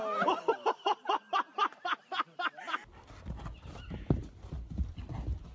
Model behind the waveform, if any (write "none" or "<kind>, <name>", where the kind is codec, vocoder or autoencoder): none